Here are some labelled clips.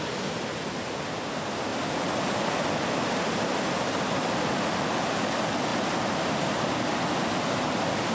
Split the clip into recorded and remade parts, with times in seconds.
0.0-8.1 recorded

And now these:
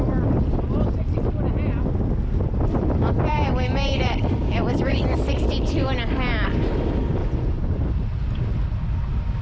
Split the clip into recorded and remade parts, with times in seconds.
0.0-7.2 recorded; 7.2-7.8 remade; 7.8-9.4 recorded

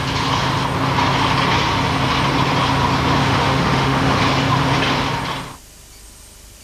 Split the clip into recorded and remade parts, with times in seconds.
0.0-3.2 recorded; 3.2-4.2 remade; 4.2-6.6 recorded

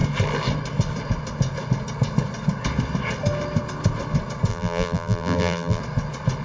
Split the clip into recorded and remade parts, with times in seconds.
0.0-4.5 recorded; 4.5-5.8 remade; 5.8-6.4 recorded

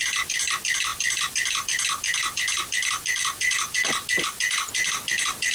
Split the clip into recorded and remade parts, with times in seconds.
0.0-5.5 recorded